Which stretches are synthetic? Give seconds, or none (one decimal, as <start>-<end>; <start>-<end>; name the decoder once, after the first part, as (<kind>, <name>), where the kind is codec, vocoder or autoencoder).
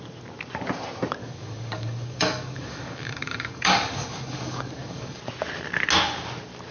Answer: 1.2-5.2 (codec, DAC)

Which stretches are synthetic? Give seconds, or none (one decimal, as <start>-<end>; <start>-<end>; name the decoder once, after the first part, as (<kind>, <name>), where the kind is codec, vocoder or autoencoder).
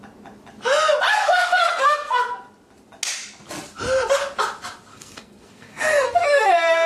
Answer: 1.1-2.2 (codec, SNAC); 4.9-6.5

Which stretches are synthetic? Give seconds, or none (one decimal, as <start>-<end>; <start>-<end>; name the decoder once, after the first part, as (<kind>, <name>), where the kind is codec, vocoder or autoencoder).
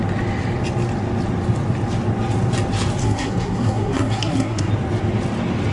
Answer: 3.0-4.7 (codec, SNAC)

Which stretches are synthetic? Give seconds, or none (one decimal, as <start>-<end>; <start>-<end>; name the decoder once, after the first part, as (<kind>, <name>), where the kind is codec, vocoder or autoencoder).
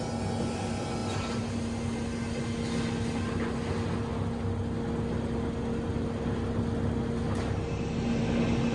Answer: none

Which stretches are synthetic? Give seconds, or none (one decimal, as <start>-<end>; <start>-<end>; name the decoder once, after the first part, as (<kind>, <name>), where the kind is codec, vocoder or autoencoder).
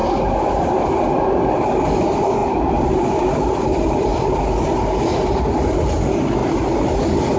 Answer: 1.2-4.1 (vocoder, BigVGAN v2); 5.5-6.4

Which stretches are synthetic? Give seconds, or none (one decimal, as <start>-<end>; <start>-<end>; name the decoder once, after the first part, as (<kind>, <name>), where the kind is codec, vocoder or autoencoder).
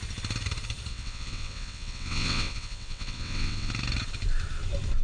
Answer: 0.9-3.7 (vocoder, WaveNeXt)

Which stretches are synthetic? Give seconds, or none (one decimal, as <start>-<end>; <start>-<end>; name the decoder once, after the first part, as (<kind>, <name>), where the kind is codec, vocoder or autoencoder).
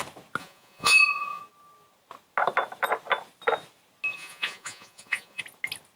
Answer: 0.4-1.4 (vocoder, Vocos); 4.1-5.4